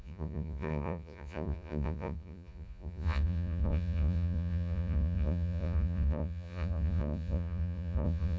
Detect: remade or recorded remade